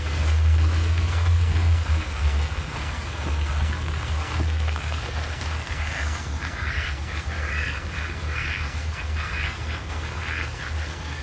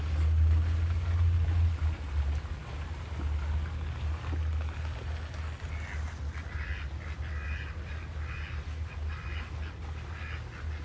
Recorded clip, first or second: second